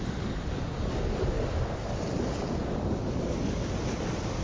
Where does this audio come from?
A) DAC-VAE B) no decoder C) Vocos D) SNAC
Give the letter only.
B